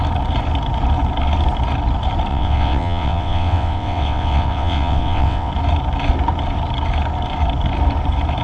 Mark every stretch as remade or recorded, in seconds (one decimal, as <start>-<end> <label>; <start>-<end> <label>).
0.0-2.3 recorded; 2.3-5.5 remade; 5.5-8.4 recorded